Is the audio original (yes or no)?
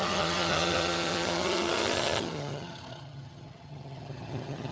no